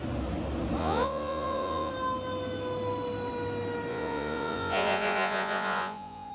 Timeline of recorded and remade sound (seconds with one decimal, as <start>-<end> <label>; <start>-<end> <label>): 0.0-0.8 recorded; 0.8-1.9 remade; 1.9-3.9 recorded; 3.9-6.3 remade